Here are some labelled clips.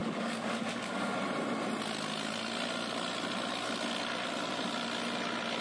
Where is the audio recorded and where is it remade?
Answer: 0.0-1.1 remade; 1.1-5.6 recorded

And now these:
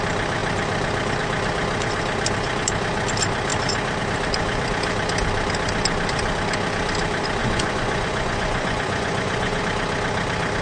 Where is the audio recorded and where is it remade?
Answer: 0.0-7.4 recorded; 7.4-9.6 remade; 9.6-10.6 recorded

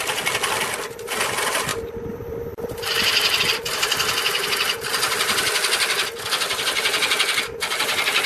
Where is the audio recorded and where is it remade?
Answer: 0.0-8.3 recorded

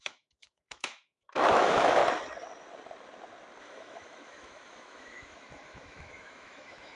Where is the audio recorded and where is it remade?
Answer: 0.0-2.0 remade; 2.0-3.6 recorded; 3.6-7.0 remade

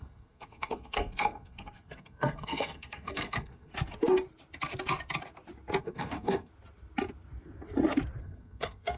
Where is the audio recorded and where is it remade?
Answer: 0.0-3.7 remade; 3.7-5.8 recorded; 5.8-6.5 remade; 6.5-8.2 recorded; 8.2-9.0 remade

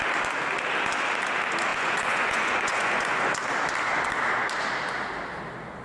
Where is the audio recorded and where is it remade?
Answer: 0.0-1.7 recorded; 1.7-3.2 remade; 3.2-5.8 recorded